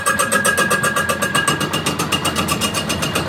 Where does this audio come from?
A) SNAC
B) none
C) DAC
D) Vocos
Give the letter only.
B